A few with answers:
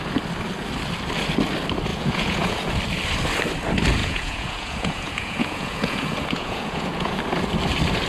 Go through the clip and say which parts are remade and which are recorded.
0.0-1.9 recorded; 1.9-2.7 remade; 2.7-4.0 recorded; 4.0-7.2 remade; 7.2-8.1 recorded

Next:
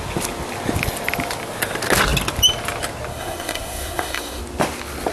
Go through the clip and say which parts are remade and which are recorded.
0.0-3.1 recorded; 3.1-4.4 remade; 4.4-5.1 recorded